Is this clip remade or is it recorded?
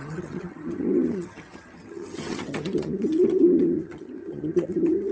remade